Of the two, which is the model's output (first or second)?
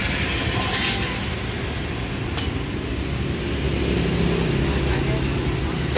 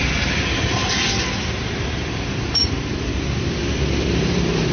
second